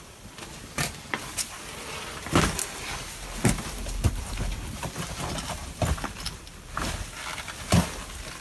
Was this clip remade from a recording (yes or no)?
no